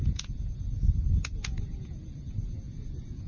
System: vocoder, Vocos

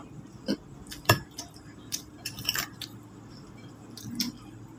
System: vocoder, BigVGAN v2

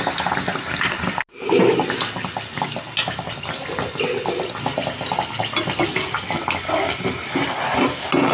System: none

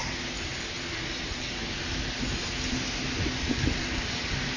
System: none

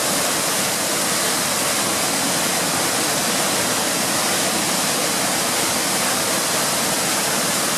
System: none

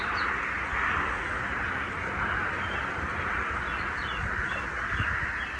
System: none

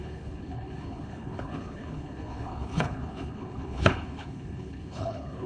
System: codec, HILCodec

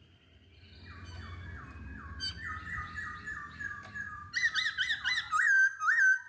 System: none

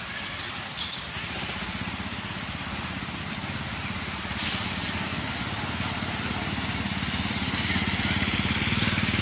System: none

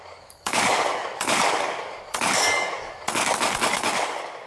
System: codec, DAC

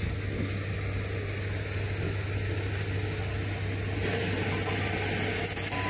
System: none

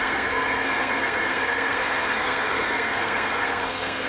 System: codec, SNAC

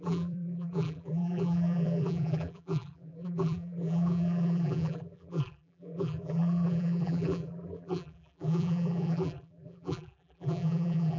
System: vocoder, BigVGAN v2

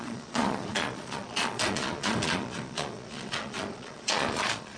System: vocoder, Vocos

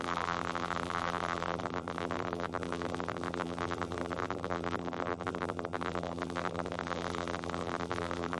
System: vocoder, BigVGAN v2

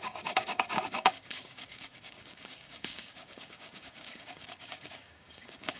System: codec, DAC